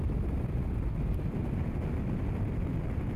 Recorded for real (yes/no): yes